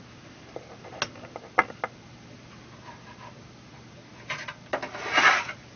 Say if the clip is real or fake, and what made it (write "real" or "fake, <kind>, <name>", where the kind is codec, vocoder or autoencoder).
real